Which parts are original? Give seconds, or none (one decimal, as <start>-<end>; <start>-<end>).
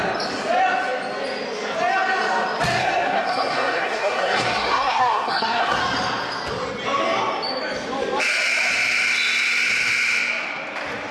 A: 0.0-2.8; 5.8-11.1